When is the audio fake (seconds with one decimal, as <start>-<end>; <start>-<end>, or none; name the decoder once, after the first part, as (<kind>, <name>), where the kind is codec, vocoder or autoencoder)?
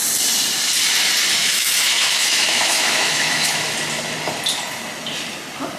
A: 1.4-3.6 (autoencoder, DAC-VAE)